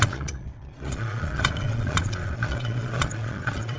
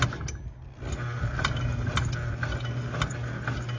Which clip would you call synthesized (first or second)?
first